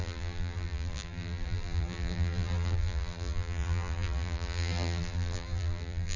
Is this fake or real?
fake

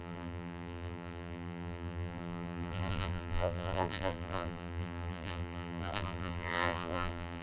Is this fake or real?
fake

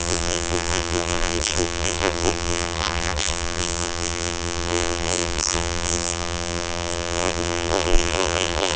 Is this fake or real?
fake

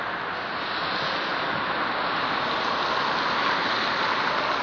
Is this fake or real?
real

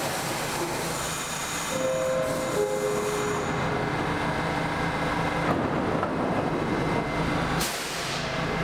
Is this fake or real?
real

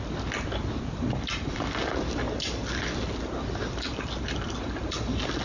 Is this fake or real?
real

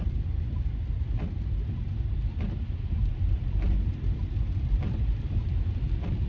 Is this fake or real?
fake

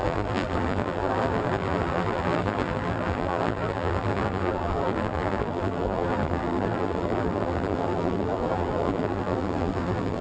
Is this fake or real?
fake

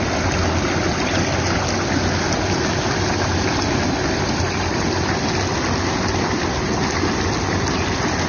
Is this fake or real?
real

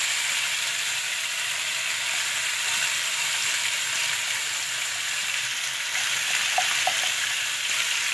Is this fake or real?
fake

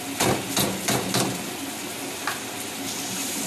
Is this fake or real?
real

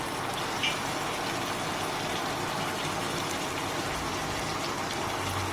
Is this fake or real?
real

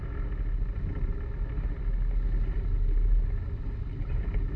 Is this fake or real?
real